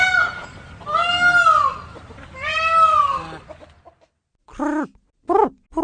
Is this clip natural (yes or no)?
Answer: yes